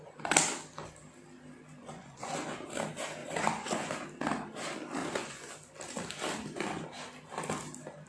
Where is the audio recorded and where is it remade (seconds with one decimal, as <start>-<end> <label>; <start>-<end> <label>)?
0.0-1.8 recorded; 1.8-2.3 remade; 2.3-3.2 recorded; 3.2-3.9 remade; 3.9-5.0 recorded; 5.0-5.5 remade; 5.5-8.1 recorded